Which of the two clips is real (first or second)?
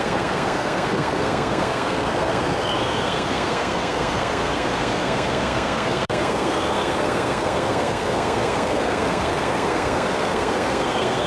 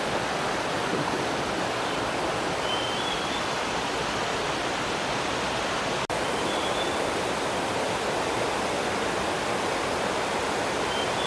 second